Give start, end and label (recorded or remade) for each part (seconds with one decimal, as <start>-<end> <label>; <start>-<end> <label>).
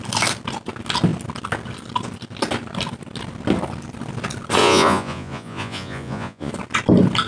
0.0-4.6 recorded; 4.6-6.5 remade; 6.5-7.3 recorded